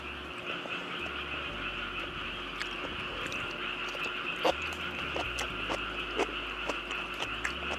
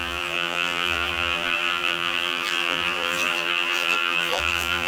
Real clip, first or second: first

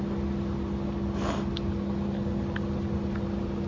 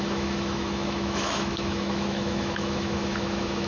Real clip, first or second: first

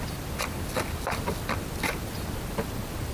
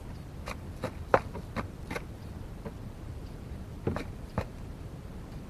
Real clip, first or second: first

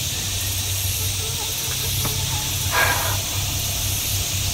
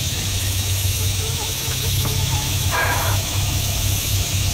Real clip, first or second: first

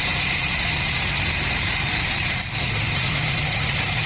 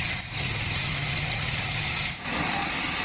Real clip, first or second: second